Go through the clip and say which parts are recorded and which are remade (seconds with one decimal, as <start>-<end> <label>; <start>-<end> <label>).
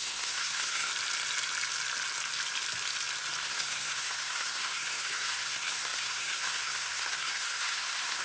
0.0-0.9 remade; 0.9-3.4 recorded; 3.4-8.2 remade